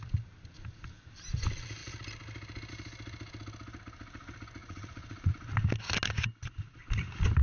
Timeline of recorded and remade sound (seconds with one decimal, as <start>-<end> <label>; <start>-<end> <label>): 0.0-4.6 recorded; 4.6-5.3 remade; 5.3-7.4 recorded